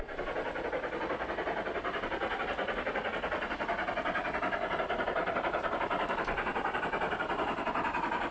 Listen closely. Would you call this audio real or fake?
real